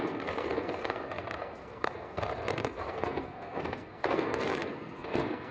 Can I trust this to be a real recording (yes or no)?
no